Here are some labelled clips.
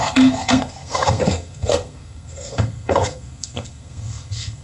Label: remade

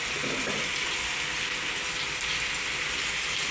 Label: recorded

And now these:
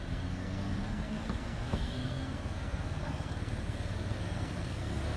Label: remade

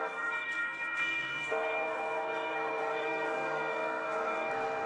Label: remade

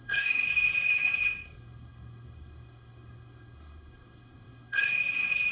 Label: remade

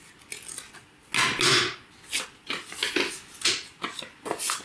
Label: recorded